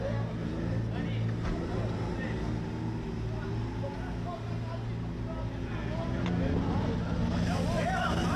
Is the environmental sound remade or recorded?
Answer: recorded